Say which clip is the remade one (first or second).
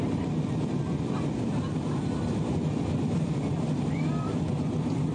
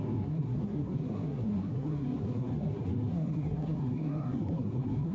second